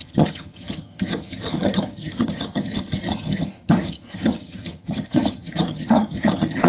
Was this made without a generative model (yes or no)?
no